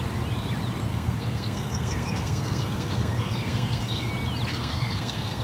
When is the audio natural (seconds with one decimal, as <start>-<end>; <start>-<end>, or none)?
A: 0.0-0.9; 4.1-4.5